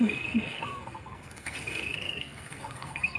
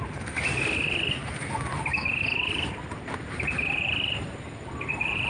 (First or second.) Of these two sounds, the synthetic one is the first